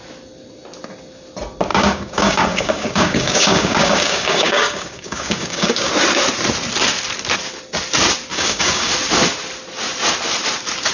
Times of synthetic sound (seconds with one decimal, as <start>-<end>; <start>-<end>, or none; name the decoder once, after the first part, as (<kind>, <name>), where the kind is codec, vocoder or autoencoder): 1.7-5.9 (codec, DAC); 8.3-8.9